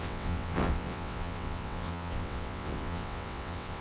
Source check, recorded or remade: remade